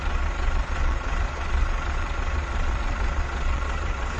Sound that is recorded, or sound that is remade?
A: remade